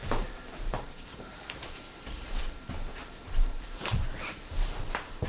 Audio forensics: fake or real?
fake